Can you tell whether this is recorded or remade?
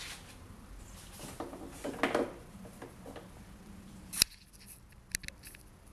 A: recorded